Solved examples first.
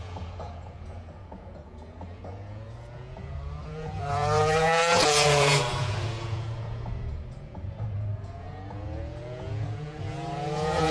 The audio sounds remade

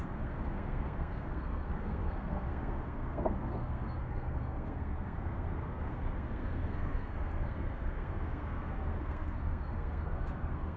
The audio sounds remade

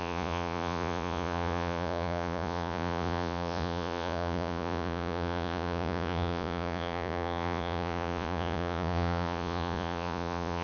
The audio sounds remade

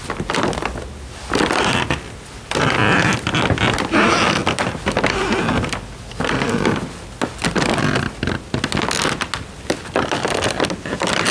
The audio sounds recorded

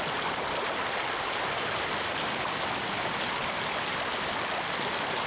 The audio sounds recorded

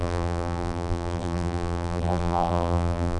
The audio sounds remade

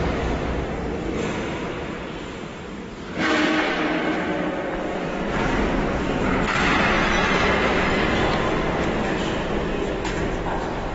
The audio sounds recorded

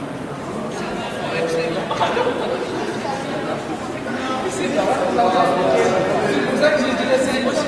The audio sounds recorded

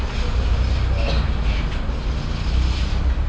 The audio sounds recorded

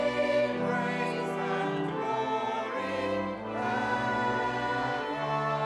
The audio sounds recorded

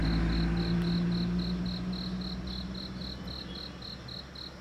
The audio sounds recorded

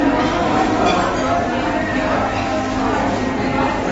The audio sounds recorded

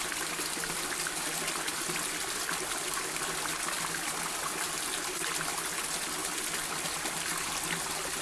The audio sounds recorded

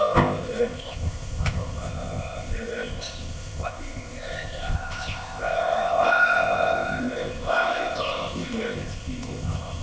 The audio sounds remade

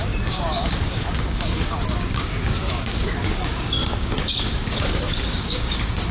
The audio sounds remade